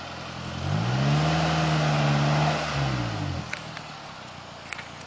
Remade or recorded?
recorded